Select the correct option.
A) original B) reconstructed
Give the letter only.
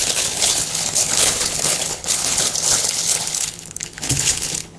B